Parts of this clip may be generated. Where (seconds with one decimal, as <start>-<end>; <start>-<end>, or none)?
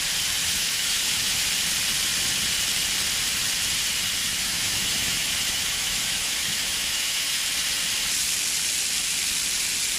0.4-1.5; 4.2-7.4